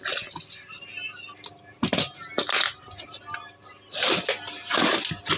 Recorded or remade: recorded